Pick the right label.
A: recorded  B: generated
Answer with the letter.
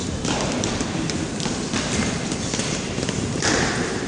B